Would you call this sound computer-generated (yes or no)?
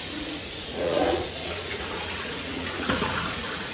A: yes